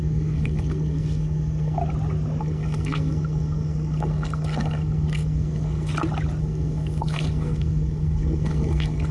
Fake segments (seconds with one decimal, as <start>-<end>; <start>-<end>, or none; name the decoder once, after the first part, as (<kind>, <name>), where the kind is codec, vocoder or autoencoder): 0.0-1.8 (codec, SNAC); 2.4-5.9; 6.4-9.1